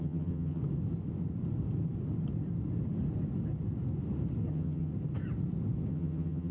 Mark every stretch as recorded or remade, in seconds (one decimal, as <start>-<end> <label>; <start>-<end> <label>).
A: 0.0-0.6 remade; 0.6-4.5 recorded; 4.5-4.9 remade; 4.9-5.9 recorded; 5.9-6.5 remade

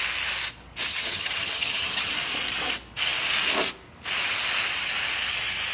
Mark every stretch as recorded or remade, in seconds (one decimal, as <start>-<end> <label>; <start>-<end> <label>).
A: 0.0-0.9 recorded; 0.9-2.1 remade; 2.1-5.7 recorded

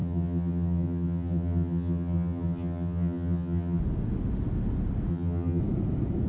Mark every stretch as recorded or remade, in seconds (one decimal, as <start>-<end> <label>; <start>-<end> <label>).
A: 0.0-3.8 remade; 3.8-5.1 recorded; 5.1-5.6 remade; 5.6-6.3 recorded

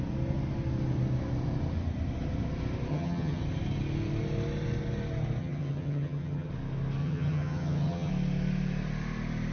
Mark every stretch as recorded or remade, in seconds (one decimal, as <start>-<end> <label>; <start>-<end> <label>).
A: 0.0-2.9 recorded; 2.9-3.4 remade; 3.4-5.4 recorded; 5.4-6.5 remade; 6.5-7.0 recorded; 7.0-8.1 remade; 8.1-9.5 recorded

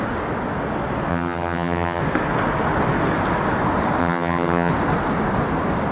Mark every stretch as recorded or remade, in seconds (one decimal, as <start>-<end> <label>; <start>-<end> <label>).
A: 0.0-1.1 recorded; 1.1-2.0 remade; 2.0-4.0 recorded; 4.0-4.7 remade; 4.7-5.9 recorded